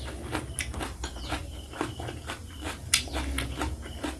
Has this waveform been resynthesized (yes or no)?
no